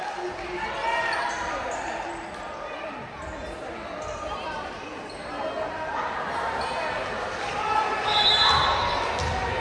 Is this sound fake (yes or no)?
no